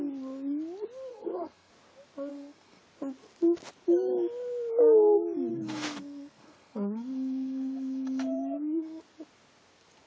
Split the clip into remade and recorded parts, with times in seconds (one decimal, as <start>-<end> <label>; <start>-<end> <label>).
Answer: 0.0-1.1 recorded; 1.1-1.7 remade; 1.7-2.3 recorded; 2.3-2.8 remade; 2.8-5.5 recorded; 5.5-9.0 remade; 9.0-10.1 recorded